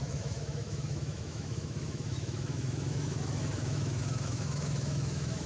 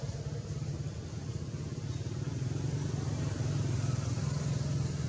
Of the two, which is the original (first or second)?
second